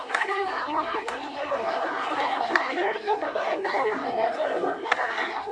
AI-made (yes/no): yes